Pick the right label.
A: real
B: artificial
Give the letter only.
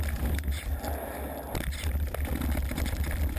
A